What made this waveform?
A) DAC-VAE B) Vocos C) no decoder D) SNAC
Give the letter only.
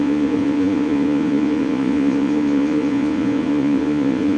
B